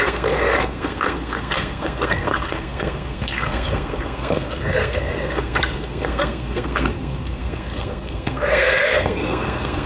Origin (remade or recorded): remade